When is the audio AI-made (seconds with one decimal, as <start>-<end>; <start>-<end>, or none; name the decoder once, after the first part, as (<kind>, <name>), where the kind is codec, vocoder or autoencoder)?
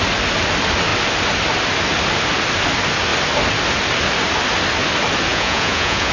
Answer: 5.3-6.1 (vocoder, Vocos)